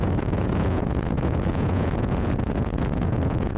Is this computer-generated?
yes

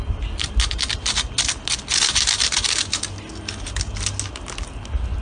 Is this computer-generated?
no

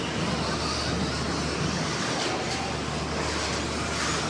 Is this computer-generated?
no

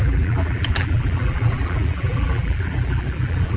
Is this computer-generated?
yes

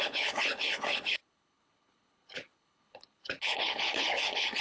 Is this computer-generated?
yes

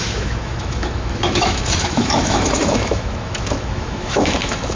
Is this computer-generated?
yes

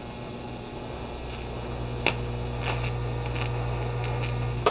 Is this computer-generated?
no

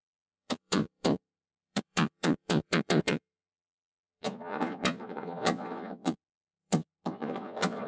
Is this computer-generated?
yes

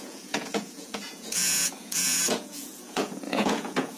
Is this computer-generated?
yes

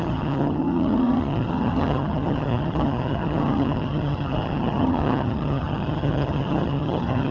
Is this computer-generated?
yes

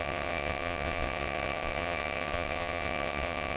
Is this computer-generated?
yes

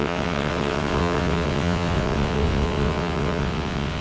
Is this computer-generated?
yes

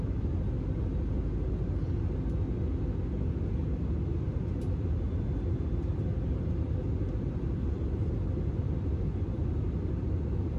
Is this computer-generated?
no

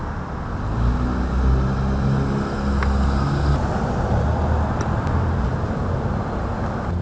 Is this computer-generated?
no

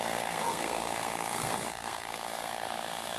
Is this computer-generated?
yes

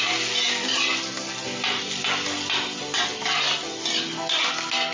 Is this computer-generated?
no